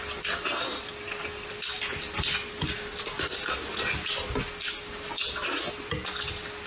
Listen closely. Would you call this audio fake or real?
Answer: real